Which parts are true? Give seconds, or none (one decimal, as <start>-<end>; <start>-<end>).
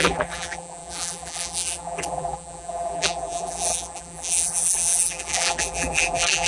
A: none